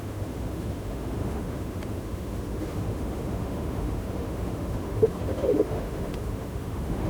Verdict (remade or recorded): remade